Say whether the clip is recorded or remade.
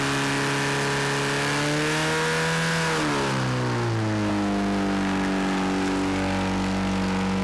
recorded